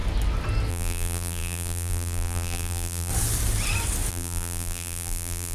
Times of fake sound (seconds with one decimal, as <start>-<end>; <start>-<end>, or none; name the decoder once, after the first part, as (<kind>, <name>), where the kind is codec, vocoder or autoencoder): 0.7-3.1 (vocoder, BigVGAN v2); 4.1-5.5